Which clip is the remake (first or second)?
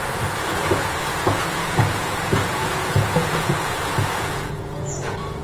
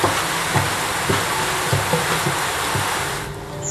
first